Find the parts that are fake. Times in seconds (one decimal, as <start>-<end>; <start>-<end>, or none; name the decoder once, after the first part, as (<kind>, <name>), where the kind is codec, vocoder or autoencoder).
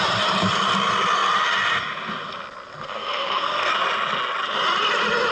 2.7-3.7 (codec, SNAC)